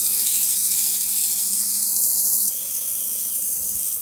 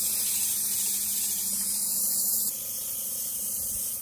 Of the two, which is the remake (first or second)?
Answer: first